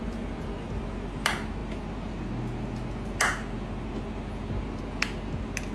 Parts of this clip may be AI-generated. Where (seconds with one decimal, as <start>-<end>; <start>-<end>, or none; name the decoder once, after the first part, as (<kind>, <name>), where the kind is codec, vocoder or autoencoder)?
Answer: none